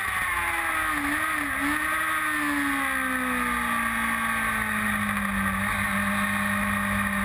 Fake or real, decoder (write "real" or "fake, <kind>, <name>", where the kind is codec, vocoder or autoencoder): real